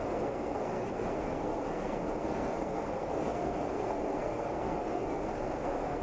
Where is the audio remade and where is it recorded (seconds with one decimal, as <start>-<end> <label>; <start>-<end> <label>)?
0.0-6.0 remade

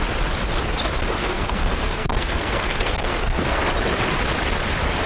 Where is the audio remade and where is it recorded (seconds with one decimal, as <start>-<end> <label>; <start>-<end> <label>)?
0.0-1.2 recorded; 1.2-3.6 remade; 3.6-5.1 recorded